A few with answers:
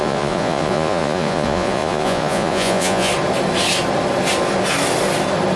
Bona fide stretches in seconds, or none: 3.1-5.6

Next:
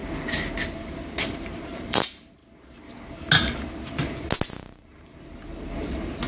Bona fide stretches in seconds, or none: 0.0-1.3; 2.4-6.3

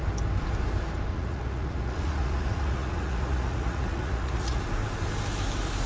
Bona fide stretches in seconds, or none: 0.0-1.1; 4.6-5.9

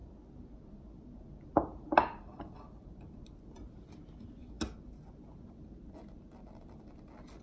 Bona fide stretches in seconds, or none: 0.0-7.4

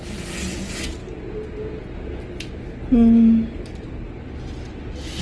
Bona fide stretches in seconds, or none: 0.0-5.2

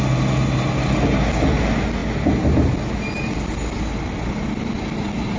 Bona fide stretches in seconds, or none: 0.0-5.4

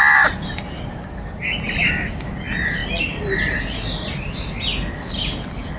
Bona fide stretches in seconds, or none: 0.0-5.8